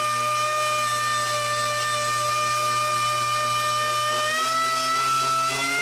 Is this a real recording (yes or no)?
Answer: yes